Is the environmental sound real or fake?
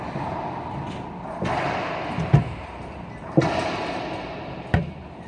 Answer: real